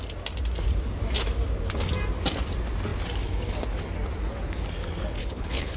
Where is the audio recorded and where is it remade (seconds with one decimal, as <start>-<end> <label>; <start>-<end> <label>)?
0.0-5.2 recorded; 5.2-5.8 remade